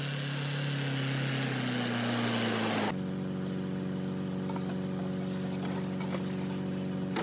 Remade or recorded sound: recorded